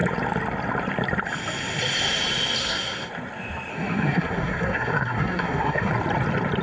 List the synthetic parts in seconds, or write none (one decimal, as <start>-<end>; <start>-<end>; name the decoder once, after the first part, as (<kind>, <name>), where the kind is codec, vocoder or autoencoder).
2.6-3.1 (codec, SNAC); 3.7-5.9